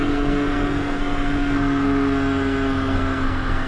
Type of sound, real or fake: fake